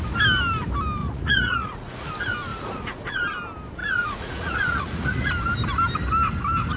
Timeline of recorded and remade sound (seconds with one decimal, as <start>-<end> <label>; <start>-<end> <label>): 0.0-1.0 recorded; 1.0-2.1 remade; 2.1-2.5 recorded; 2.5-3.2 remade; 3.2-3.8 recorded; 3.8-5.3 remade; 5.3-6.8 recorded